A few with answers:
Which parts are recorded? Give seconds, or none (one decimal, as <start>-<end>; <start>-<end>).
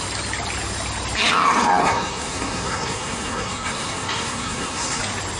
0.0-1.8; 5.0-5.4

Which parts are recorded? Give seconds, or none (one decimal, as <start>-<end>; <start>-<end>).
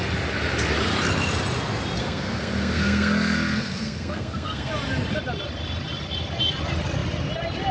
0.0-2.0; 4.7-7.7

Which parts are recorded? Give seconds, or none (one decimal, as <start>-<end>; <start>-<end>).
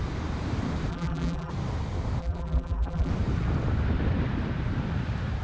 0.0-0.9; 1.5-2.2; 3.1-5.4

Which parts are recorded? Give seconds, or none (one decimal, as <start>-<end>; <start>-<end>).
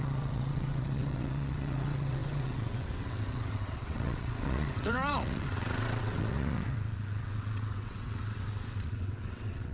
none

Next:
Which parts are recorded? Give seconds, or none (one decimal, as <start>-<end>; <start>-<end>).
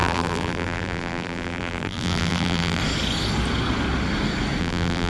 2.8-4.6